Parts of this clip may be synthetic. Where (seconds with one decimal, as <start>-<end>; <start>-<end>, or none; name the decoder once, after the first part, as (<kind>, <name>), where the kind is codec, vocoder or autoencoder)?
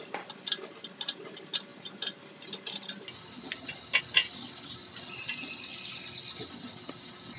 none